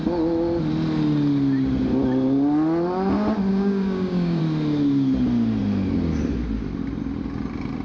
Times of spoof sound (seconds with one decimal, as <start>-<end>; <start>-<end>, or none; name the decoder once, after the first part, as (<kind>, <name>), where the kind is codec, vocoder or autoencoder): 3.5-4.4 (codec, DAC)